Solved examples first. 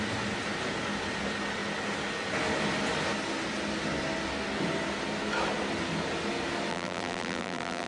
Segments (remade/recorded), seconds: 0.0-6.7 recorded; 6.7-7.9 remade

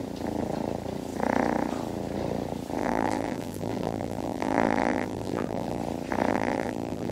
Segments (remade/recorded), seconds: 0.0-2.8 recorded; 2.8-5.8 remade; 5.8-6.3 recorded; 6.3-7.1 remade

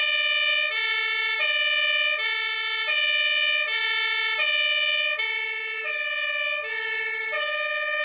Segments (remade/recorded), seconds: 0.0-8.0 recorded